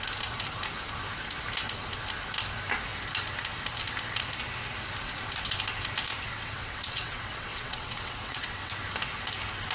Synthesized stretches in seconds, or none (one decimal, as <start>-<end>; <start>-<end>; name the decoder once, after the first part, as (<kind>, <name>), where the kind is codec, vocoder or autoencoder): 6.1-8.7 (vocoder, WaveNeXt)